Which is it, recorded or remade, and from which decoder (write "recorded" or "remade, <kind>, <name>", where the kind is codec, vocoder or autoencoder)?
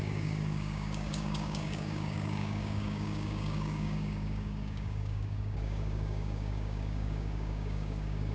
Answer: remade, codec, DAC